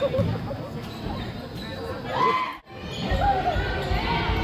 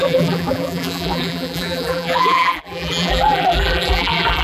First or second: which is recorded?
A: first